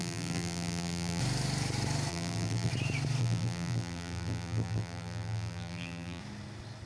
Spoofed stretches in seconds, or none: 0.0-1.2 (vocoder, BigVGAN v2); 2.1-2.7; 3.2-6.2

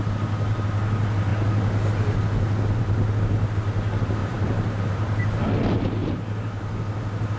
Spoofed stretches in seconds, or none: 4.2-5.4 (vocoder, BigVGAN v2); 6.0-6.8

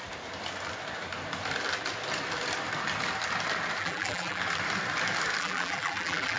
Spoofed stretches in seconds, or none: 3.8-4.4 (vocoder, BigVGAN v2); 5.4-6.4

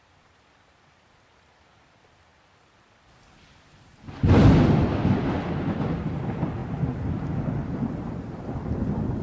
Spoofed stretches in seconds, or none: 0.0-2.3 (vocoder, BigVGAN v2); 5.5-9.2